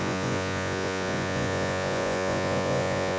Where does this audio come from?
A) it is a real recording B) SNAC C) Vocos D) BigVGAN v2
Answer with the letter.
C